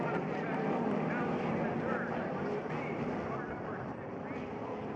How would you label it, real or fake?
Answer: real